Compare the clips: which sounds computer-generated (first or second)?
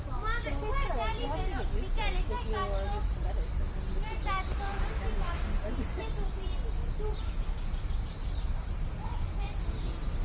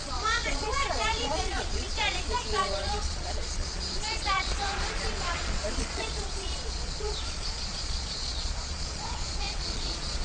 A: second